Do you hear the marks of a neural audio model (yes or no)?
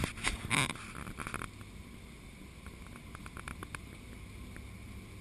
no